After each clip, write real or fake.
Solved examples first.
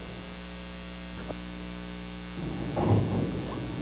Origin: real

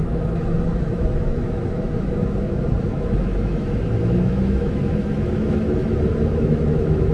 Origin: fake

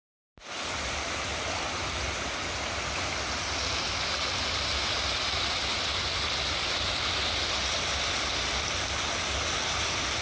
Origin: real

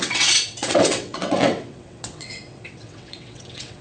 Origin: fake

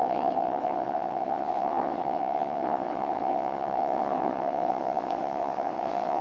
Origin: fake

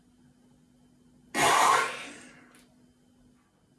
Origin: real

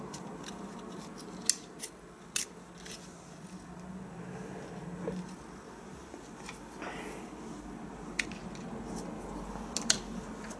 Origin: real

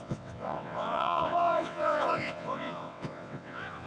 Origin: fake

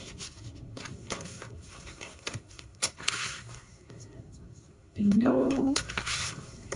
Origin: fake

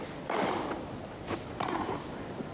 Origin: real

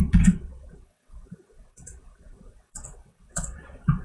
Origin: fake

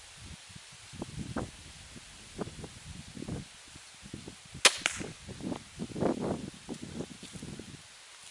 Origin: real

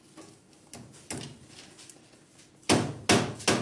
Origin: real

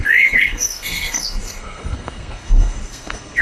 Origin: fake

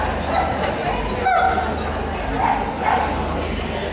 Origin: real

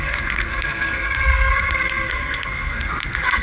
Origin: fake